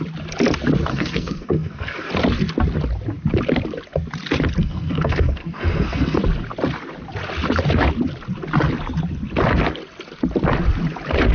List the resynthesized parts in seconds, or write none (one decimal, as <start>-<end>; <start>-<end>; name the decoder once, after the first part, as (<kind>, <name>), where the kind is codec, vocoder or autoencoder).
0.9-2.1 (codec, SNAC); 4.6-6.2